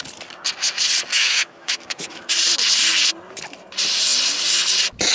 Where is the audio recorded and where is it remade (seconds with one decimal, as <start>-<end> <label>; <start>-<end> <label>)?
0.0-1.1 recorded; 1.1-2.3 remade; 2.3-5.1 recorded